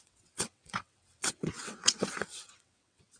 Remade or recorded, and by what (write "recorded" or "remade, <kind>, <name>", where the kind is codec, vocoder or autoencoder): remade, vocoder, WaveNeXt